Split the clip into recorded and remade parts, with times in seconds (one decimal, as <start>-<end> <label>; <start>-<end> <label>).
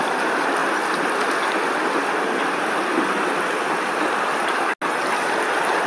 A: 0.0-5.9 recorded